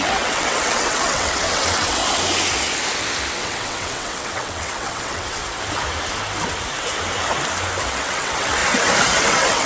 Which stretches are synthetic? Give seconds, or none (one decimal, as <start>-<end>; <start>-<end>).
0.0-2.0; 3.3-5.4; 7.8-8.6; 9.2-9.7